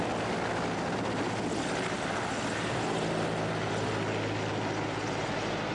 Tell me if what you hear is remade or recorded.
recorded